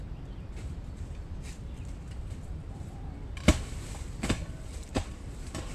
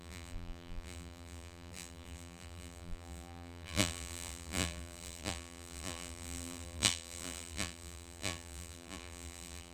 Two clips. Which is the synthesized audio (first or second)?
second